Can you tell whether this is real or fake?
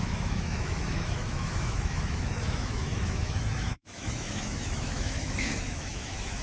fake